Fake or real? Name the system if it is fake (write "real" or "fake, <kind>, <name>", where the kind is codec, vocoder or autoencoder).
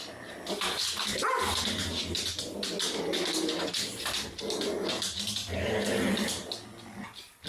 real